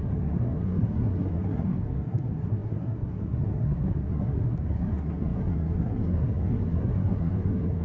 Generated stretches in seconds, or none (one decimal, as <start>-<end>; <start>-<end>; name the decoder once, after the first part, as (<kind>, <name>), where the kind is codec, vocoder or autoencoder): 0.0-7.8 (codec, SNAC)

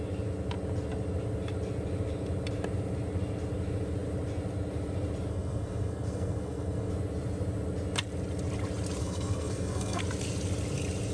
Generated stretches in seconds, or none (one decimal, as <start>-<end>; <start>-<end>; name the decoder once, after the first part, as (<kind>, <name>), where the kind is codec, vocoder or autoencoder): 5.3-6.9 (codec, SNAC); 9.0-10.0